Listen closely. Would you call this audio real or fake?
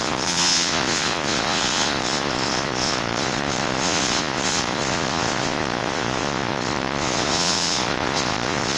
fake